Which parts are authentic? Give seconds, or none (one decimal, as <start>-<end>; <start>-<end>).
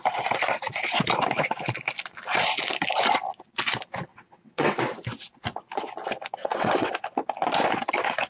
0.0-4.1; 4.8-6.4; 6.9-8.3